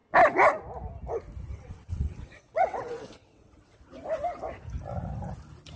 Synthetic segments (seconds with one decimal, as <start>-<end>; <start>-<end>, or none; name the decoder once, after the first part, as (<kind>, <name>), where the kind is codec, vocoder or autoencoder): 1.5-3.9 (vocoder, WaveNeXt)